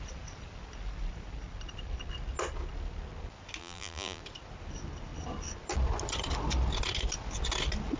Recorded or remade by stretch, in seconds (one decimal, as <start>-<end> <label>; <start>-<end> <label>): 0.0-3.6 recorded; 3.6-4.2 remade; 4.2-8.0 recorded